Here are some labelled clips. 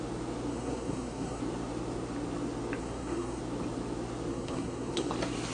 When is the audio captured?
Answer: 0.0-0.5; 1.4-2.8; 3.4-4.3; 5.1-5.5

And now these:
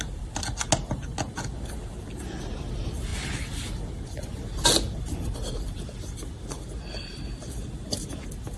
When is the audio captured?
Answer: 0.0-8.6

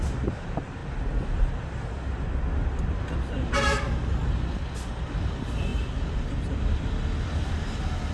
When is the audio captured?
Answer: 0.0-8.1

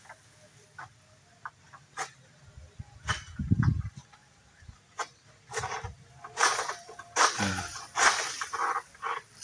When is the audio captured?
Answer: 0.0-4.2; 8.9-9.4

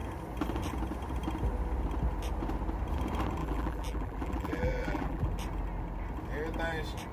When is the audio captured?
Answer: 0.0-3.4; 5.3-7.1

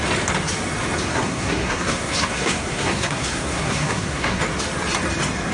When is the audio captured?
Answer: 0.0-1.1; 4.4-5.5

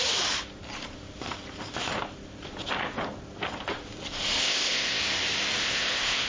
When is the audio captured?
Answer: 0.0-4.4; 5.0-5.6